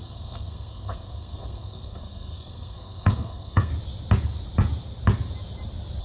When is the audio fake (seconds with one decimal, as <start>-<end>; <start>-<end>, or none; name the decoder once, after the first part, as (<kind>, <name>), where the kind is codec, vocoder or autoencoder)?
0.0-3.7 (codec, SNAC)

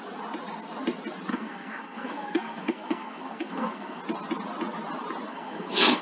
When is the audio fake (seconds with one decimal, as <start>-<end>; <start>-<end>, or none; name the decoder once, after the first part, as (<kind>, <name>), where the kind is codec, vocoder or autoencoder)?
1.3-4.0 (codec, SNAC); 5.3-6.0